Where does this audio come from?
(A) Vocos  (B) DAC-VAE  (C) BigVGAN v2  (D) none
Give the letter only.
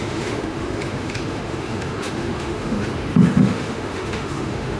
B